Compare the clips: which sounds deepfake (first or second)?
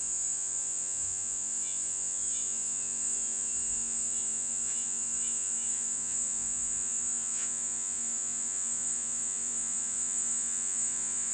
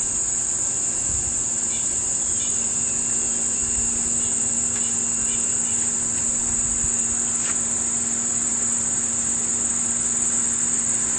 first